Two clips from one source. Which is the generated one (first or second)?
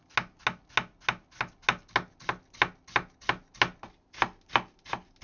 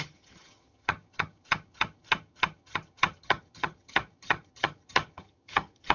second